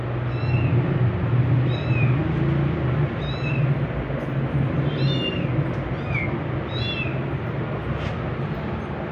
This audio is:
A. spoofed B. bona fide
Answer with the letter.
B